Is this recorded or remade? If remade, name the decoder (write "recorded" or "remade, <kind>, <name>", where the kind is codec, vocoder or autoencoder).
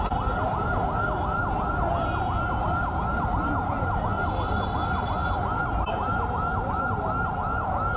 recorded